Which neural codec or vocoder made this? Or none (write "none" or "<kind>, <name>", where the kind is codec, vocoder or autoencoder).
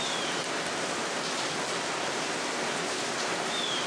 none